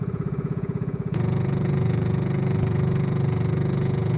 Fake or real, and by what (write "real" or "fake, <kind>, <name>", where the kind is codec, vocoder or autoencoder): fake, vocoder, Vocos